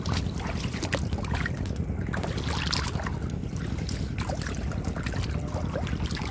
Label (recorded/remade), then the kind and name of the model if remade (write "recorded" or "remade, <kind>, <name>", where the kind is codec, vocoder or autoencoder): recorded